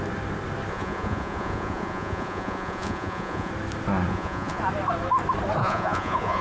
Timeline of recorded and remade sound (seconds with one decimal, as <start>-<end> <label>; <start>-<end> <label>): 0.0-0.7 recorded; 0.7-3.5 remade; 3.5-4.1 recorded; 4.1-4.6 remade; 4.6-5.6 recorded; 5.6-6.4 remade